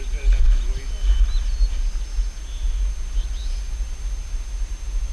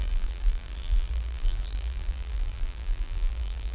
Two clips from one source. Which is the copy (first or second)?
second